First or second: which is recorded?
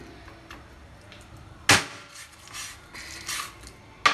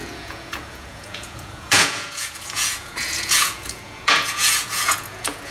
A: first